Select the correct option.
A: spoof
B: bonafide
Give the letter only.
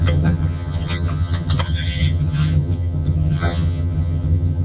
A